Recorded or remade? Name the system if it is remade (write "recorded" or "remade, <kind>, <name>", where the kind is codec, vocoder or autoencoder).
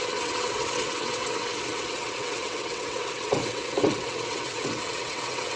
remade, vocoder, WaveNeXt